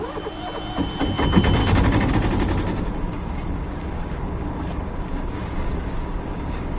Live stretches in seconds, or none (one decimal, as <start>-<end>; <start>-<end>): 0.0-1.6; 2.1-2.7